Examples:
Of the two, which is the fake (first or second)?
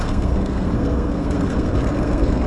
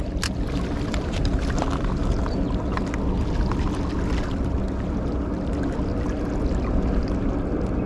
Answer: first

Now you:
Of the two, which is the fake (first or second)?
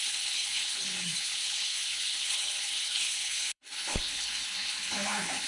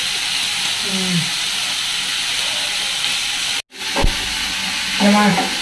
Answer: first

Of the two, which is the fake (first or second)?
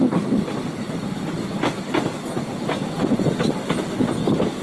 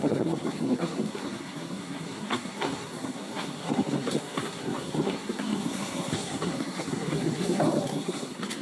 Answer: second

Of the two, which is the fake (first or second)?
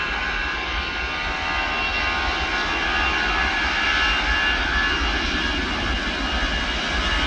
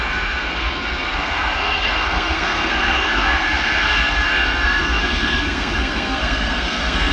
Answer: second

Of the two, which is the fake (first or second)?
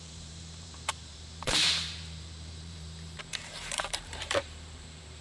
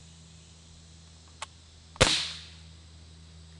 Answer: first